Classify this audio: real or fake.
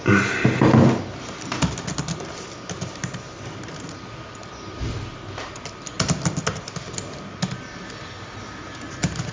real